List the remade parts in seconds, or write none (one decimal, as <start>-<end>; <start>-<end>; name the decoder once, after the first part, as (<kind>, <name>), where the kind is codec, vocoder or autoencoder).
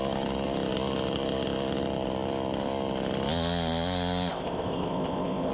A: 4.3-5.5 (codec, ZipCodec)